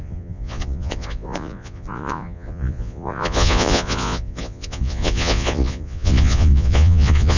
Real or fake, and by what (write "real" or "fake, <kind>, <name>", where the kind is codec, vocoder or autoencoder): fake, vocoder, Vocos